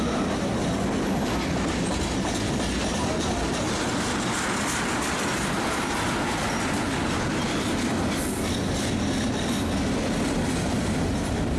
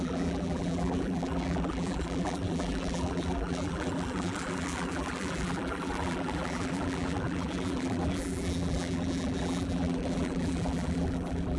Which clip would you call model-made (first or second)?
second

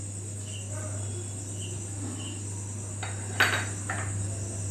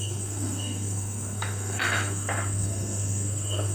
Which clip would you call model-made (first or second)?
second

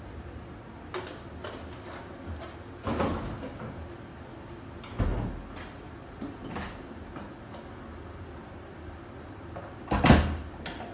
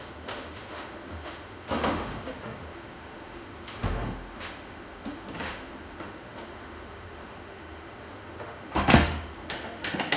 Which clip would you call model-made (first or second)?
second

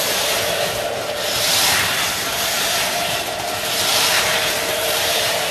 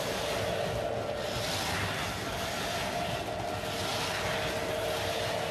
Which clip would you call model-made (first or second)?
first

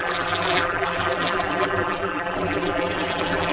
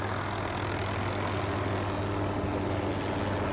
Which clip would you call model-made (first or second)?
first